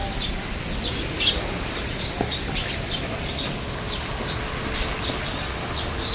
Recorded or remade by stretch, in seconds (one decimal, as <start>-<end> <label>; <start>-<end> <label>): 0.0-6.1 recorded